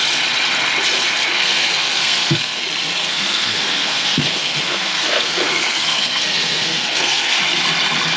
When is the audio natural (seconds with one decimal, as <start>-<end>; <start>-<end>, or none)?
0.0-1.3; 2.6-3.0; 7.4-8.2